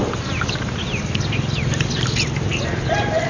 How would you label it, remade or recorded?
recorded